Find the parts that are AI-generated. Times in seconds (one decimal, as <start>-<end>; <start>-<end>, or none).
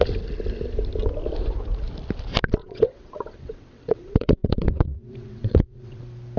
2.6-6.0